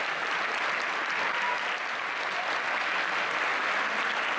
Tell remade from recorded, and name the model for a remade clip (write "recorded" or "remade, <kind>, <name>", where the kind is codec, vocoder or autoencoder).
recorded